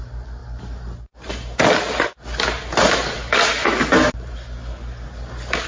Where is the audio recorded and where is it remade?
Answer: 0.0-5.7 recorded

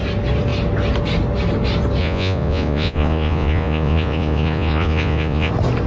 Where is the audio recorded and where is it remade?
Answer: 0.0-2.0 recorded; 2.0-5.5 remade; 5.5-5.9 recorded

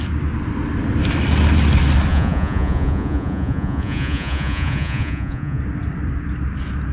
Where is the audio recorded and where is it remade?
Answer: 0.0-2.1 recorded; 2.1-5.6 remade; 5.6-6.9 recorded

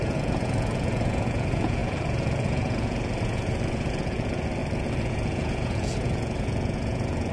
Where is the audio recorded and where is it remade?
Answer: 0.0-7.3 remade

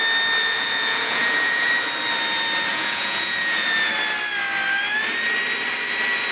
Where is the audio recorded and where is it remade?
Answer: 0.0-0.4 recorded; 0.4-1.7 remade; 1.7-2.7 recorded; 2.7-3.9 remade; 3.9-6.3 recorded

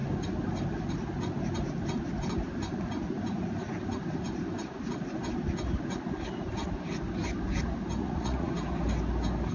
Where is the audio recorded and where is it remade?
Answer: 0.0-8.0 recorded; 8.0-8.5 remade; 8.5-9.5 recorded

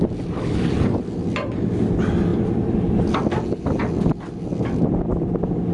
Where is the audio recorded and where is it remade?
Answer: 0.0-5.7 recorded